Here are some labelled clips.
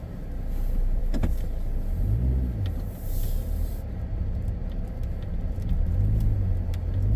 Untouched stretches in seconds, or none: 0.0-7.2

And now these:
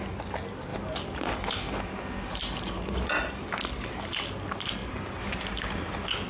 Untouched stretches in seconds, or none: 0.0-4.8

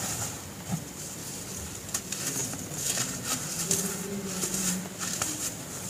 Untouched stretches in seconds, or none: 1.2-2.0

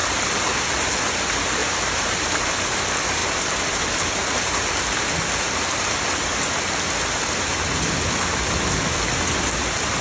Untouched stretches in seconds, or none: 0.0-1.6; 2.8-3.2; 3.8-10.0